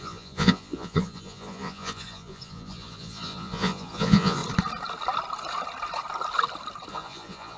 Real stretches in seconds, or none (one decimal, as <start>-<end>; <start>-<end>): 4.4-6.9